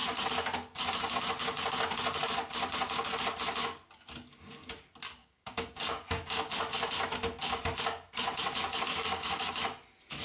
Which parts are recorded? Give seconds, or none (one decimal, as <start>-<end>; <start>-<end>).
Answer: 0.0-5.2; 6.5-8.9; 9.5-10.2